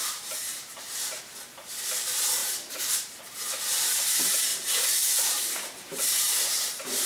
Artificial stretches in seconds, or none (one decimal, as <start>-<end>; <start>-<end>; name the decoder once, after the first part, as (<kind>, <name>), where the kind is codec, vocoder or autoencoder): 0.0-1.7 (vocoder, BigVGAN v2); 2.4-3.2; 4.5-7.1